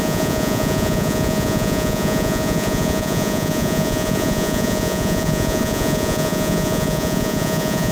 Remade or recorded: remade